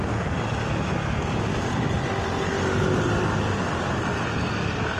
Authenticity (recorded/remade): recorded